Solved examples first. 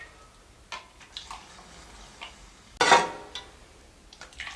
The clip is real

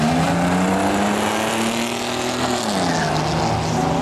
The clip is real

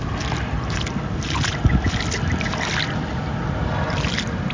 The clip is real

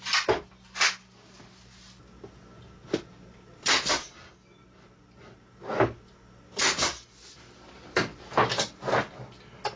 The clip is real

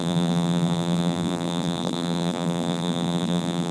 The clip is fake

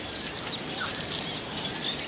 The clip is real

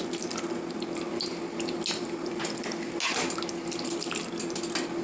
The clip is real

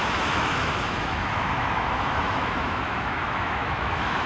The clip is fake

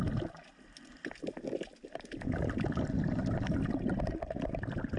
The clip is real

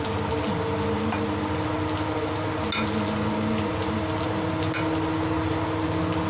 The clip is real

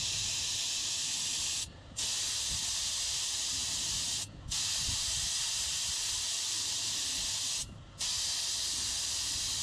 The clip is real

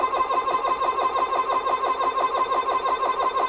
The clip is real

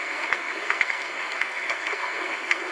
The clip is fake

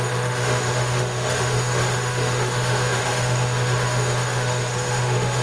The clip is fake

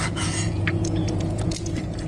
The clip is fake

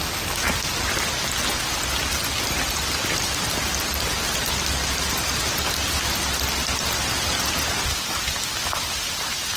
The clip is real